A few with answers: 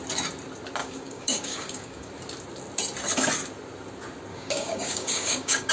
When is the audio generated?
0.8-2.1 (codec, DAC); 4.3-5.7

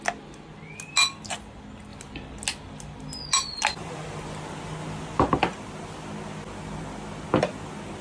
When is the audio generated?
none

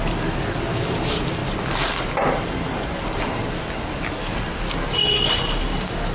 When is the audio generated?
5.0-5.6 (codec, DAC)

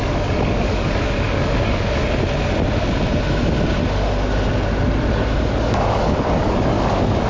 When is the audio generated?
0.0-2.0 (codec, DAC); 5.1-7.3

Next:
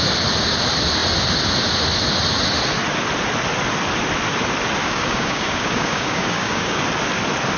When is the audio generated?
4.8-6.8 (codec, DAC)

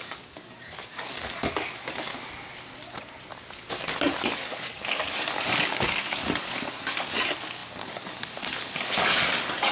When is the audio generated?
0.0-2.1 (codec, DAC); 4.2-9.7